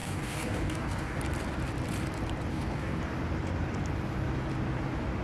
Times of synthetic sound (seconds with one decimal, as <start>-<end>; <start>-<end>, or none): 0.0-1.2; 2.5-3.0